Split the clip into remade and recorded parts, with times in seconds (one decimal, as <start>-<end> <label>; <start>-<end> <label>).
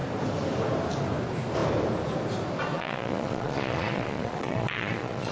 0.0-2.7 recorded; 2.7-5.3 remade